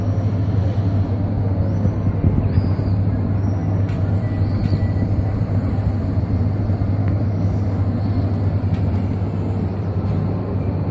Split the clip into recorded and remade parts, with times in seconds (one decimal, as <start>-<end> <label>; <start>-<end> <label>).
0.0-7.0 recorded; 7.0-7.8 remade; 7.8-10.9 recorded